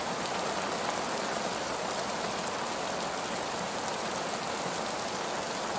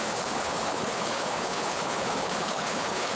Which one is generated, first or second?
second